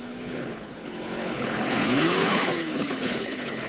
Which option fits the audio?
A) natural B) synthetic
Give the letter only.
B